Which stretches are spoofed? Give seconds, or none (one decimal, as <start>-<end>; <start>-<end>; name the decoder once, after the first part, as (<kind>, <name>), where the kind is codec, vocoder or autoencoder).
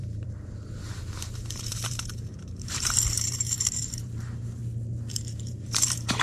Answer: 0.0-4.6 (vocoder, BigVGAN v2); 5.1-6.2